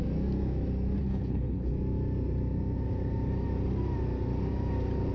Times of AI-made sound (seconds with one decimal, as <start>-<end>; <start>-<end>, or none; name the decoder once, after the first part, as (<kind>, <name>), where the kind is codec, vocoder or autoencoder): 1.0-1.7 (codec, HILCodec)